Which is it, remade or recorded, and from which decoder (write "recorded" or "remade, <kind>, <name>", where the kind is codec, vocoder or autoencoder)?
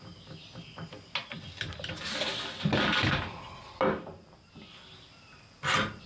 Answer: recorded